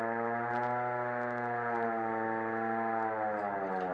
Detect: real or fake real